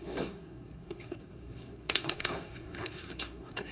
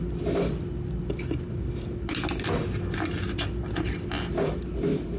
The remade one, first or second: first